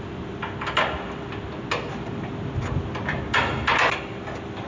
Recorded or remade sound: recorded